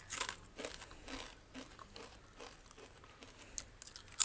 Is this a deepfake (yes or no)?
no